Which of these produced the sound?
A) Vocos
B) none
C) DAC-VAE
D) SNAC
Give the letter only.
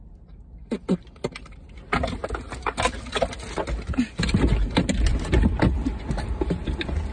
B